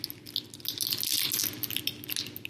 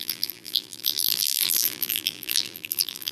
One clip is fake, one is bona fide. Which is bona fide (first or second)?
first